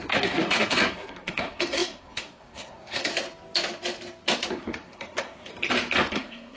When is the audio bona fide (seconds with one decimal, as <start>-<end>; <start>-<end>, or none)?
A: 3.1-4.5; 5.5-6.1